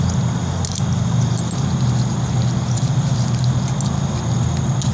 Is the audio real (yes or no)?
yes